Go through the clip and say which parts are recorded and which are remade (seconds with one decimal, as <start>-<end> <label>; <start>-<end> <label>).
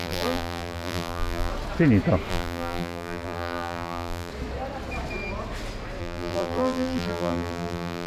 0.0-1.5 remade; 1.5-2.3 recorded; 2.3-4.3 remade; 4.3-6.0 recorded; 6.0-8.1 remade